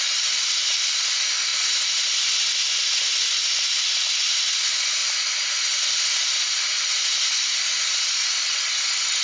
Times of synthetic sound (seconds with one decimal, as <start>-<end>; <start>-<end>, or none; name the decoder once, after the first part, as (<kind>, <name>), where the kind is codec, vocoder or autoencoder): 1.5-3.3 (vocoder, BigVGAN v2)